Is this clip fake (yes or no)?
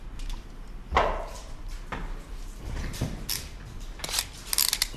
no